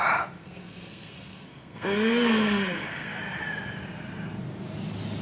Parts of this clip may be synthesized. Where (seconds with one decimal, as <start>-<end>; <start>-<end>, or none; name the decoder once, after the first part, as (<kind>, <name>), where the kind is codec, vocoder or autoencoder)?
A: 0.4-3.2 (codec, SNAC)